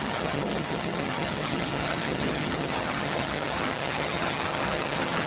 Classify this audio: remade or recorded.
remade